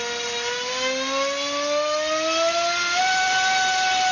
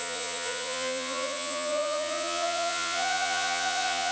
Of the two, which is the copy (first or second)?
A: second